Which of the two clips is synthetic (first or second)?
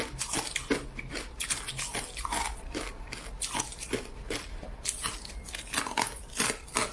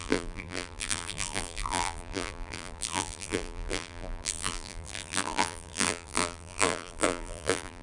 second